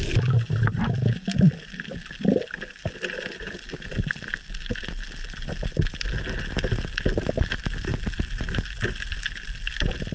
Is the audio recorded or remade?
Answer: recorded